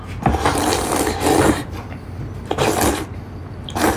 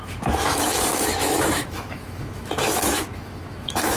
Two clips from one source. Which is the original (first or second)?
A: first